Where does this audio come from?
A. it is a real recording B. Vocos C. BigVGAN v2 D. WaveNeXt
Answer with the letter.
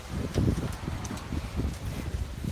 C